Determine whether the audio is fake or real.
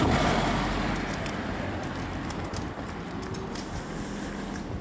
real